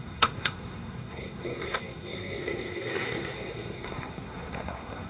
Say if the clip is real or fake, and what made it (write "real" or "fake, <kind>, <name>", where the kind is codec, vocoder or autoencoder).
fake, codec, SNAC